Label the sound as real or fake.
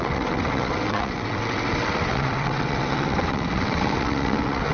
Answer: fake